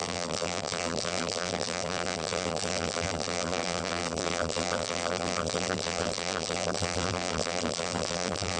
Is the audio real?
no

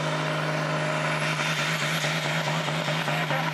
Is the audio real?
yes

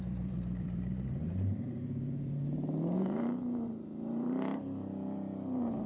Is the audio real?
no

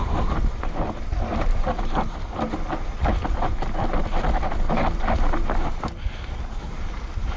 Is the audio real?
yes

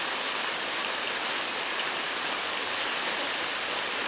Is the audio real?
yes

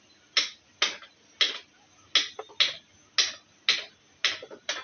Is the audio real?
yes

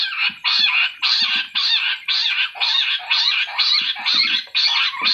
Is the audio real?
yes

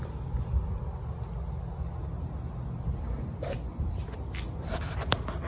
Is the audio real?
yes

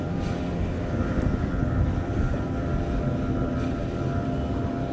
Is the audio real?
yes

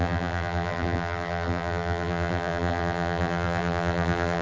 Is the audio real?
no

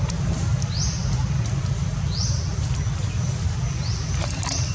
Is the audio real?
yes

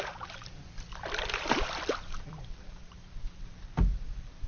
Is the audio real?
no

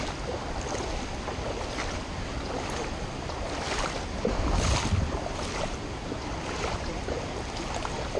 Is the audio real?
yes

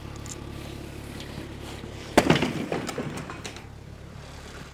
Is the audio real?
no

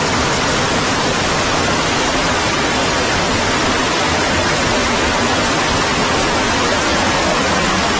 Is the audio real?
yes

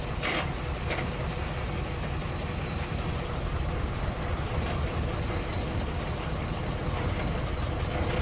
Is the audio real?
yes